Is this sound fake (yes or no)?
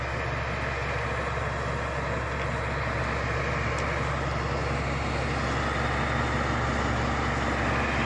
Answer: no